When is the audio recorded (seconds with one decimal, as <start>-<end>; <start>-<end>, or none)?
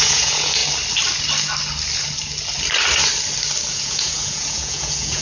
0.6-3.7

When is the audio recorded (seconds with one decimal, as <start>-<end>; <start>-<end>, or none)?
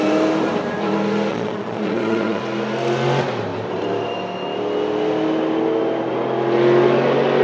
0.0-1.3; 2.4-7.4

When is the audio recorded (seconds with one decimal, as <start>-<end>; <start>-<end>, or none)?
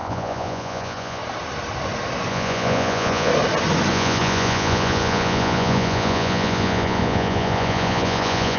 1.2-2.3; 3.3-3.9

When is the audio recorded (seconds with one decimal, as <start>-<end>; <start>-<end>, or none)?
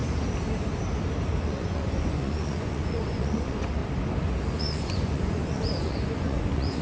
0.0-1.4; 3.8-4.6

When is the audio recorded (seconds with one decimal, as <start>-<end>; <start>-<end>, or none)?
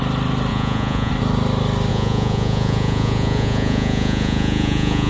0.0-0.5; 1.1-1.9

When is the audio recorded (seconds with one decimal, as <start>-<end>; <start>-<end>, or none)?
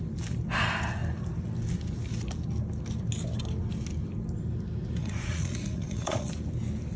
0.0-5.0; 6.3-7.0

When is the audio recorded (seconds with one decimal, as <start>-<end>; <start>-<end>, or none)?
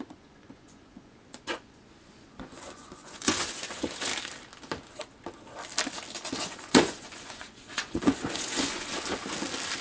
4.1-6.4; 8.9-9.8